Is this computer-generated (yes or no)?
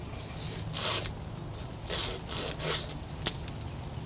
no